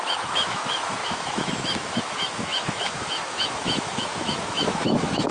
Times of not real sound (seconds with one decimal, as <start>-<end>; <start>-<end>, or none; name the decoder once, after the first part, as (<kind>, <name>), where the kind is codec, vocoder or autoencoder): 0.0-5.3 (autoencoder, DAC-VAE)